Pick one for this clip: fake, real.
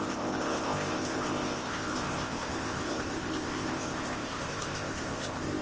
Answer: fake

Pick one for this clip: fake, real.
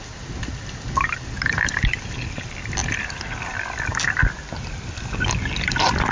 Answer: real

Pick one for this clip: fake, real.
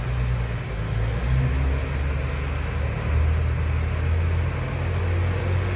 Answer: real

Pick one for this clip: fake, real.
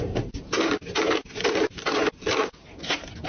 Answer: real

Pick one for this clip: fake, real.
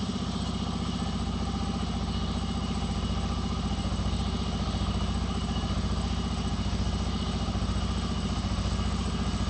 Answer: real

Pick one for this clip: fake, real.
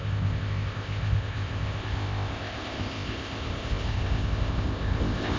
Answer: fake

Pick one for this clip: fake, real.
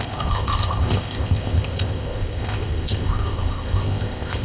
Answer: fake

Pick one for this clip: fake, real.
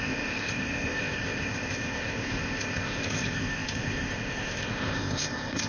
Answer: fake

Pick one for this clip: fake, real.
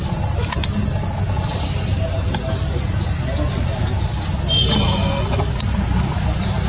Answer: real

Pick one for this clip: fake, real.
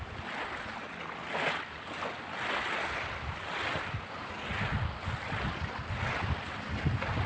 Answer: real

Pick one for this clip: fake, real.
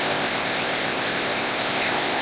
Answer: fake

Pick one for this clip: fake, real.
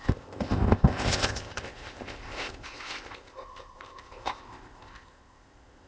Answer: fake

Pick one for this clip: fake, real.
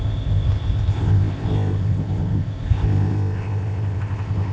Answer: fake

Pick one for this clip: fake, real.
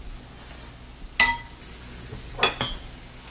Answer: real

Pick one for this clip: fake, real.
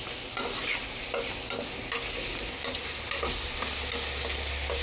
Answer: real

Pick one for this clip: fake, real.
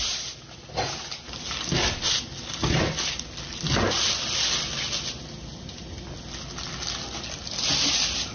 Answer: real